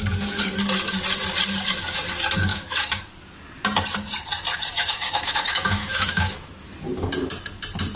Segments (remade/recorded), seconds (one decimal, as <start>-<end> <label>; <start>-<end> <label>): 0.0-2.5 recorded; 2.5-3.0 remade; 3.0-4.8 recorded; 4.8-6.5 remade; 6.5-8.0 recorded